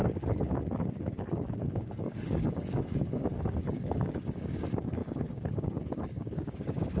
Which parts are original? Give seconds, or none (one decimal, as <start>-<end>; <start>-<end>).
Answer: none